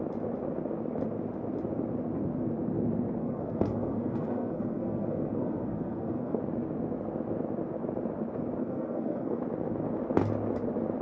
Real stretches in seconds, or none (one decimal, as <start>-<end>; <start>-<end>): 0.0-3.2; 6.4-8.6; 9.4-11.0